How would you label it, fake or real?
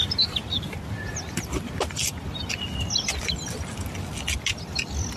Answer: real